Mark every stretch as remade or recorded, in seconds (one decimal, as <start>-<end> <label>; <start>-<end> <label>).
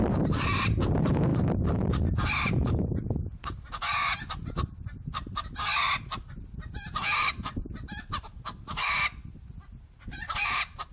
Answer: 0.0-5.7 remade; 5.7-9.8 recorded; 9.8-10.9 remade